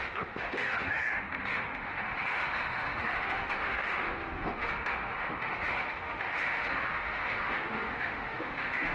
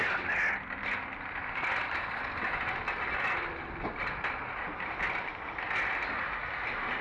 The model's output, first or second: first